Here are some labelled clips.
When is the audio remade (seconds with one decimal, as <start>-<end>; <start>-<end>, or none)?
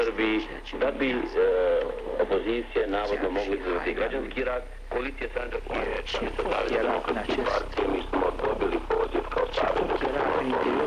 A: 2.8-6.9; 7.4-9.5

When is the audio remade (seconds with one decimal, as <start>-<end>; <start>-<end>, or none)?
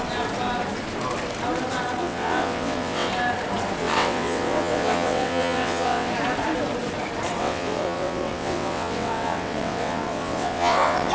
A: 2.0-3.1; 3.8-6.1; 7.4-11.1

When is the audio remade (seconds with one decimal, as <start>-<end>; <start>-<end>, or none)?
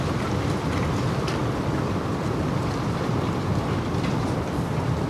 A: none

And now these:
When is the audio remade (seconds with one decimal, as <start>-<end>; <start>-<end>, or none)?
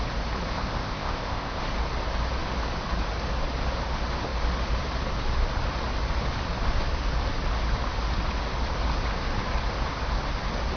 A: 0.5-1.6